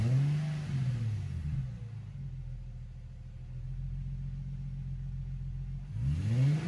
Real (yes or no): yes